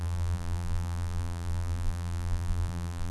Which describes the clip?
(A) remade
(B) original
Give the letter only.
A